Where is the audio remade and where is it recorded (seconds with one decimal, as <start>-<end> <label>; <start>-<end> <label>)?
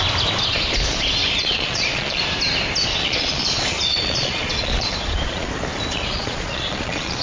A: 0.0-1.4 recorded; 1.4-2.2 remade; 2.2-2.9 recorded; 2.9-5.5 remade; 5.5-5.9 recorded; 5.9-7.2 remade